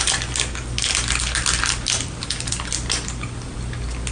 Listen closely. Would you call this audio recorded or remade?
recorded